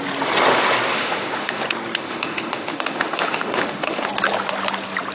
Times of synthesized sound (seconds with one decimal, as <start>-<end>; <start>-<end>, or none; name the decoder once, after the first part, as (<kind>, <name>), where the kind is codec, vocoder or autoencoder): 0.9-1.6 (autoencoder, DAC-VAE); 2.0-4.1